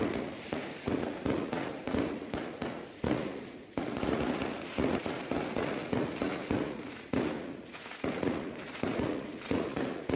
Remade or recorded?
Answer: remade